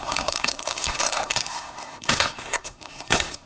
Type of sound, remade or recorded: remade